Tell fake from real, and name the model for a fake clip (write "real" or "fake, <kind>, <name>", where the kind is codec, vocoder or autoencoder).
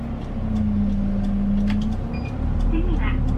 real